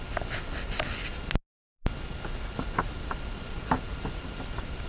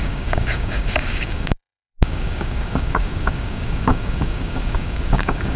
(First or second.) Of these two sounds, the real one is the first